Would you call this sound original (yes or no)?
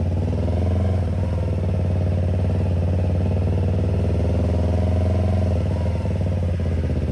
yes